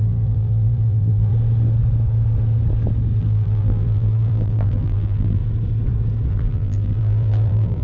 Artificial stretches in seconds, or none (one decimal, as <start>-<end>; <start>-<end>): 0.0-1.3; 3.2-5.4; 6.3-7.8